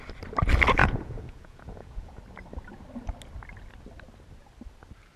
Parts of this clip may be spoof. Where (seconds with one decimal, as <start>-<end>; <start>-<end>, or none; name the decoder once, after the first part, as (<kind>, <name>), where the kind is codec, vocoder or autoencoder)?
0.8-2.2 (vocoder, Vocos)

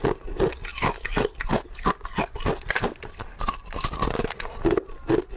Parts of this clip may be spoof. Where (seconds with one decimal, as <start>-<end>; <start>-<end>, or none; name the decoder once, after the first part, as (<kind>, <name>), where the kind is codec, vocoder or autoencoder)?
none

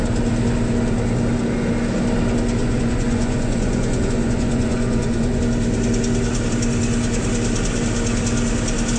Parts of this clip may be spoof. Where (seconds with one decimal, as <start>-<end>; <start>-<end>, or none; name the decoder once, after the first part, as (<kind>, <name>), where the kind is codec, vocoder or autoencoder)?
2.6-5.4 (vocoder, Vocos)

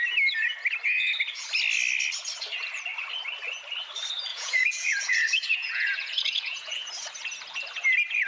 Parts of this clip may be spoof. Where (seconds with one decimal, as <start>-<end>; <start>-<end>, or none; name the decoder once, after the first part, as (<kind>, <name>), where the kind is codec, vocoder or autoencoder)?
4.3-6.9 (vocoder, Vocos)

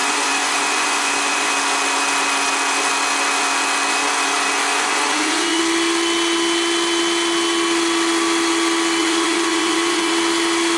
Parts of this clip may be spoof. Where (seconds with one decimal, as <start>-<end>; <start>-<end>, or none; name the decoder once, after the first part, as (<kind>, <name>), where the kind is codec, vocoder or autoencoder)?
0.0-1.5 (vocoder, Vocos); 4.7-5.6; 9.0-10.1

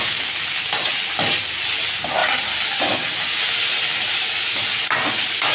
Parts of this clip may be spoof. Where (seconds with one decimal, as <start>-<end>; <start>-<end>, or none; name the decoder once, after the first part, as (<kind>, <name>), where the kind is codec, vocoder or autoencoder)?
none

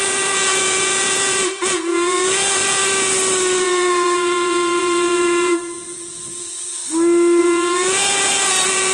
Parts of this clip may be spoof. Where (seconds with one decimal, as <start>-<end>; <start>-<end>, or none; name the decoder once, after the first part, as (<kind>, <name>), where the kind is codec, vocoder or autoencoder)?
0.0-2.8 (vocoder, Vocos); 3.6-6.8; 7.4-8.9